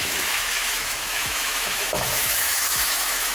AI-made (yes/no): yes